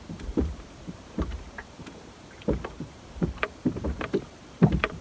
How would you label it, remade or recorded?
remade